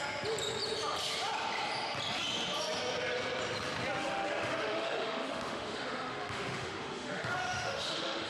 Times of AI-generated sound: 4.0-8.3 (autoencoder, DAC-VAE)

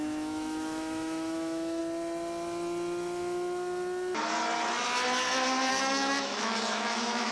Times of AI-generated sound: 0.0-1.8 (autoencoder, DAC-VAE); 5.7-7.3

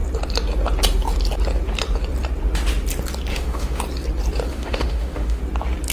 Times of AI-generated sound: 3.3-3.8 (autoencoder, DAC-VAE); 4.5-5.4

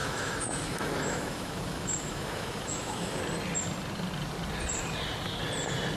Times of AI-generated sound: 0.0-3.2 (autoencoder, DAC-VAE)

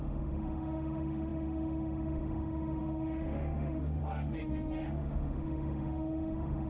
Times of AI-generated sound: 0.0-6.7 (autoencoder, DAC-VAE)